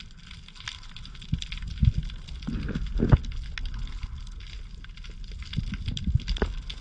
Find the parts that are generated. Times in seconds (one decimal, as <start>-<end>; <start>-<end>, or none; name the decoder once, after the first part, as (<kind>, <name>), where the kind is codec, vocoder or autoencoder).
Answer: none